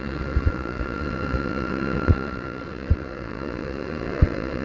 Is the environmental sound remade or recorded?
remade